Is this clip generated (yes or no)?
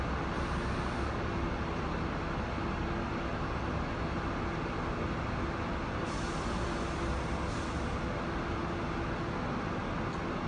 no